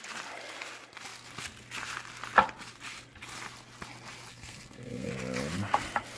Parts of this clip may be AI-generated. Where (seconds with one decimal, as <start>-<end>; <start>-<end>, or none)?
4.3-5.1